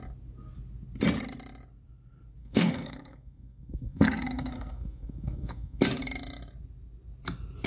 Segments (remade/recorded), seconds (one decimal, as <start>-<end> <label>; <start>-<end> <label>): 0.0-2.4 recorded; 2.4-5.8 remade; 5.8-7.7 recorded